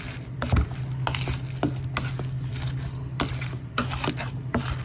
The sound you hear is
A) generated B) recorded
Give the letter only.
B